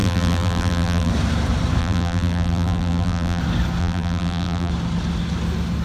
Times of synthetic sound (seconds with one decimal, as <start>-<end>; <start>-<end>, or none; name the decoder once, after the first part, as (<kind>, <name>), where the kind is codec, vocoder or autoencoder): 0.0-1.1 (vocoder, BigVGAN v2); 1.8-3.4; 3.8-4.7